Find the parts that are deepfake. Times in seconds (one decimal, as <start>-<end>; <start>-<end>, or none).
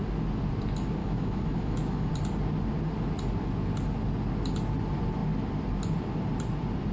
1.0-2.1